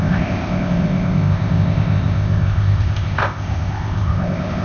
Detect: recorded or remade remade